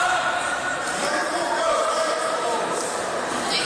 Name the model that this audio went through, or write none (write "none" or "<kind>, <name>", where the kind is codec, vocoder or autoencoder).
vocoder, BigVGAN v2